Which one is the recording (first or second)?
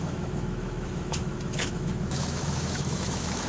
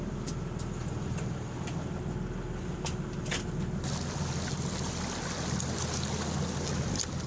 second